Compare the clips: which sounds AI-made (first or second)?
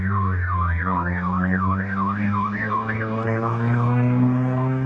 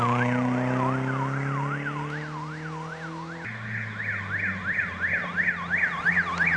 first